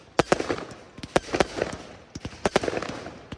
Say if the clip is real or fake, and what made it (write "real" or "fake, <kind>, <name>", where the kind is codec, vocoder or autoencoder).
real